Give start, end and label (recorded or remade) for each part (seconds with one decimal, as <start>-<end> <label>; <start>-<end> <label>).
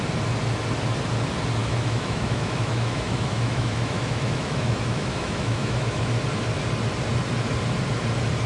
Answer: 0.0-1.6 recorded; 1.6-6.2 remade; 6.2-8.5 recorded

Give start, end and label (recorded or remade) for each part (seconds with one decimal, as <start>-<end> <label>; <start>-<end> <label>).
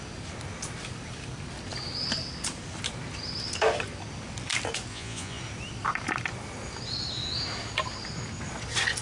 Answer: 0.0-4.9 recorded; 4.9-5.4 remade; 5.4-9.0 recorded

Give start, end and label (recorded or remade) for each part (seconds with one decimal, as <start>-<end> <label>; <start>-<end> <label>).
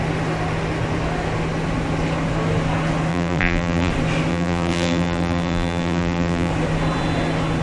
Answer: 0.0-3.1 recorded; 3.1-3.9 remade; 3.9-4.3 recorded; 4.3-6.5 remade; 6.5-7.6 recorded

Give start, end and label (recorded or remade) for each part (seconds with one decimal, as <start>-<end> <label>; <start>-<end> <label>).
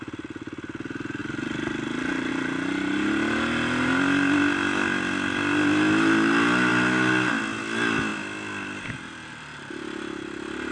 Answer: 0.0-10.7 recorded